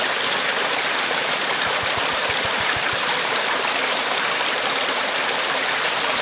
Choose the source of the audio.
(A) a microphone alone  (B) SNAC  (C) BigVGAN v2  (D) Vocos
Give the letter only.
C